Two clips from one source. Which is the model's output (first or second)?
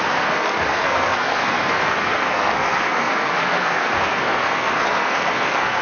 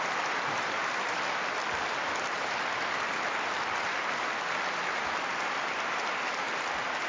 first